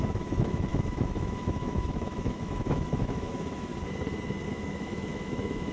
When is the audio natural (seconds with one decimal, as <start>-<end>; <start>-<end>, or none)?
3.7-4.5